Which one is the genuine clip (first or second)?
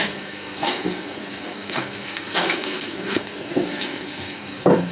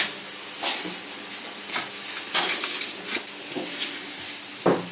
second